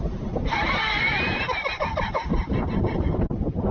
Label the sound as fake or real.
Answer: real